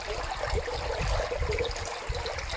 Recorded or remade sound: recorded